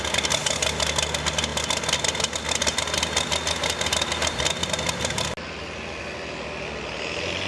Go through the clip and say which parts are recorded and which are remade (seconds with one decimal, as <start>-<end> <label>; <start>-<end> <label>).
0.0-7.5 recorded